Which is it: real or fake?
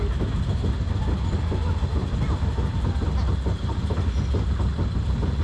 real